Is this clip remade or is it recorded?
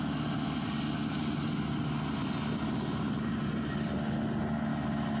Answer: recorded